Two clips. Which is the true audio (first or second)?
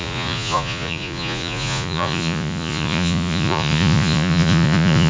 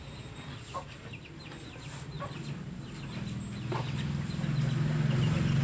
second